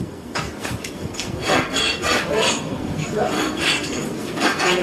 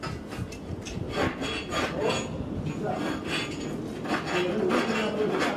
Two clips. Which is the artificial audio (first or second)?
first